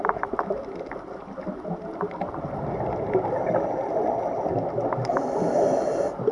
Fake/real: real